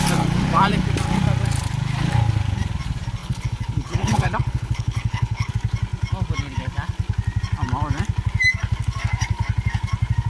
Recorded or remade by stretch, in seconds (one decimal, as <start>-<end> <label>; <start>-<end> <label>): 0.0-3.2 recorded; 3.2-5.5 remade; 5.5-10.3 recorded